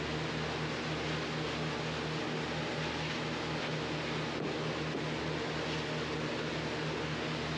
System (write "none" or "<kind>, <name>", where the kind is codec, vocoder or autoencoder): none